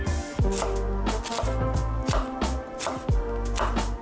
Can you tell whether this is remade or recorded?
recorded